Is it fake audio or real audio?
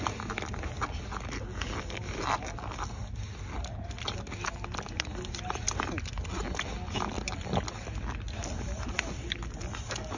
real